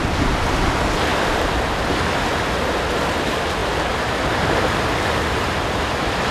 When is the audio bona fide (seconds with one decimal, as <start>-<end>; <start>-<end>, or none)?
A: 0.0-6.3